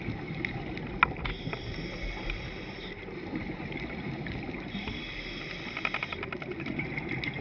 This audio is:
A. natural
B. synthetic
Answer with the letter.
A